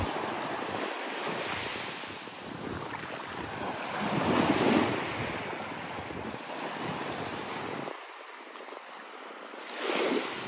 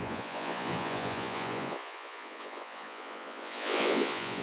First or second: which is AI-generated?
second